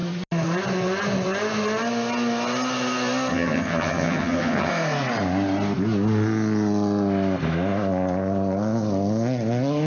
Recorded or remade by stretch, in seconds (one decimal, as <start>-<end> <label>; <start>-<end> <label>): 0.0-3.3 recorded; 3.3-4.7 remade; 4.7-9.9 recorded